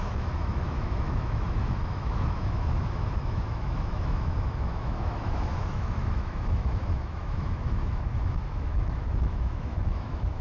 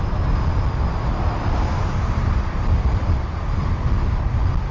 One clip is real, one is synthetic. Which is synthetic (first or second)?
first